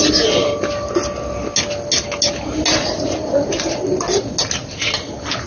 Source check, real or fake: real